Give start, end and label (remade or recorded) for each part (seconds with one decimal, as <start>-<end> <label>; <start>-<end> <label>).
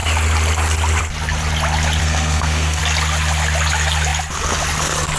0.0-2.0 recorded; 2.0-2.8 remade; 2.8-5.2 recorded